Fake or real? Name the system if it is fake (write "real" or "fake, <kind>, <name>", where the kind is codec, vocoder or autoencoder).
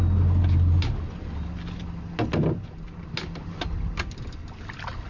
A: real